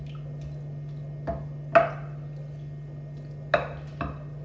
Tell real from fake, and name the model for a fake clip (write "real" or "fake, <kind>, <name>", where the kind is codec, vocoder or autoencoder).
real